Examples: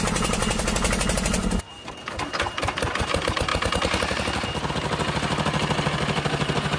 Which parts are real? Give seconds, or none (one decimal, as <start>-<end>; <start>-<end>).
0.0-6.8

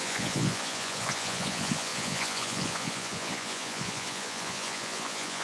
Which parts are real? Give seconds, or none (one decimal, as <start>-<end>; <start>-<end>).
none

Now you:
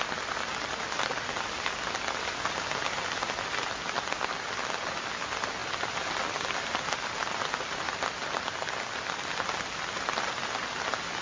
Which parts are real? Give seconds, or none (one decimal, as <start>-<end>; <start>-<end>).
0.0-11.2

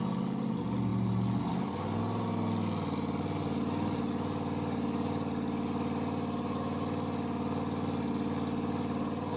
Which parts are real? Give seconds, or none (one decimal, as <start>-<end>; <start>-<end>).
0.0-9.4

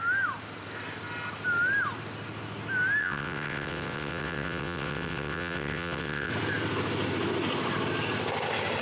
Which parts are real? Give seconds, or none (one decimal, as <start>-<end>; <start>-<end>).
0.0-3.0; 6.3-8.8

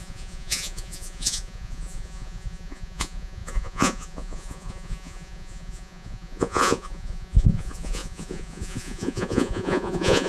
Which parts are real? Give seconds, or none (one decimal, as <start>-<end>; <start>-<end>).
none